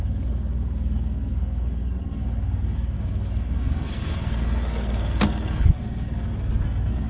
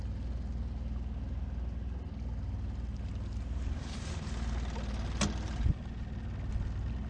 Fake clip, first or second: first